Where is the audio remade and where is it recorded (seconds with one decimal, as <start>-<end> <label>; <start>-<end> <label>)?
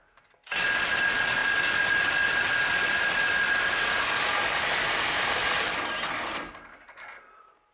0.0-7.7 recorded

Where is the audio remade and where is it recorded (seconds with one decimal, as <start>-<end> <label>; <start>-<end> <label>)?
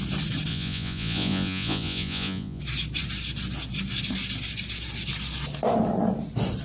0.0-0.5 recorded; 0.5-2.6 remade; 2.6-6.6 recorded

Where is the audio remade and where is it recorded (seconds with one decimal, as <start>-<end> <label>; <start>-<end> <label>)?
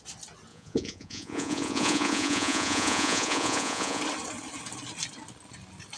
0.0-0.5 recorded; 0.5-4.0 remade; 4.0-6.0 recorded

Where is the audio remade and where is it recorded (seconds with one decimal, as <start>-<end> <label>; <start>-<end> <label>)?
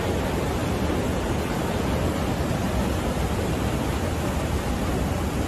0.0-5.5 recorded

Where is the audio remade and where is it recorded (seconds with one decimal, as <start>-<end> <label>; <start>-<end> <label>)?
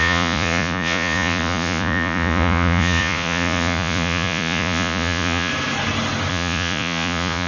0.0-5.5 remade; 5.5-6.3 recorded; 6.3-7.5 remade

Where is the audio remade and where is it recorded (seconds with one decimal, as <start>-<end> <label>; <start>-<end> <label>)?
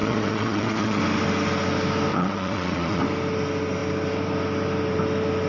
0.0-1.0 remade; 1.0-2.1 recorded; 2.1-3.0 remade; 3.0-5.5 recorded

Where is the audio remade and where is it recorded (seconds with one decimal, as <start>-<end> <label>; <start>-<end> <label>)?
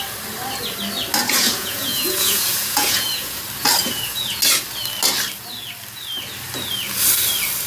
0.0-1.2 recorded; 1.2-3.4 remade; 3.4-3.8 recorded; 3.8-4.4 remade; 4.4-7.7 recorded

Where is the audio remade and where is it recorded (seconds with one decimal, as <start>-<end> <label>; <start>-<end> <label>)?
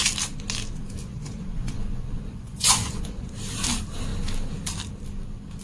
0.0-1.0 recorded; 1.0-3.3 remade; 3.3-5.6 recorded